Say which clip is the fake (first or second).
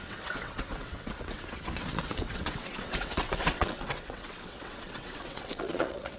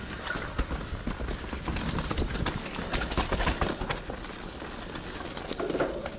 first